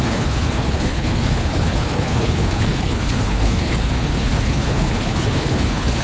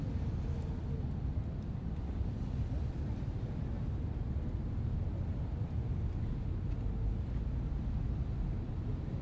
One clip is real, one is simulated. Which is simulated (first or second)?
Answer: first